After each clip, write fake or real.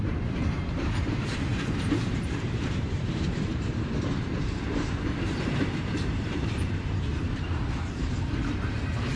fake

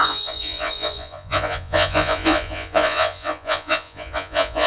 fake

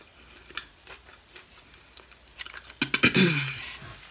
real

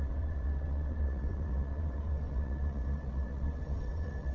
fake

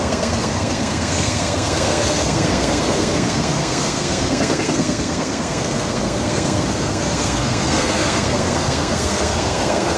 fake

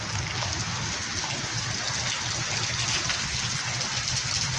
real